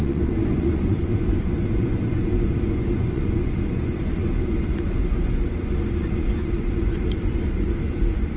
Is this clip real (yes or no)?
no